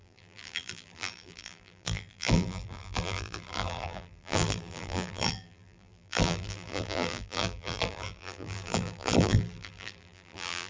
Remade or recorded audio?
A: remade